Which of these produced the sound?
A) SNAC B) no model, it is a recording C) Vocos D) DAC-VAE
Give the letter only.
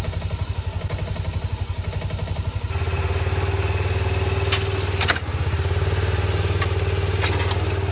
B